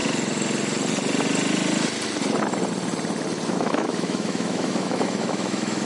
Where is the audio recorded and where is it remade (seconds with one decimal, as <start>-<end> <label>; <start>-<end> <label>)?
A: 0.0-3.5 recorded; 3.5-5.8 remade